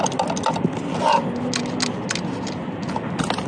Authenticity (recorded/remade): recorded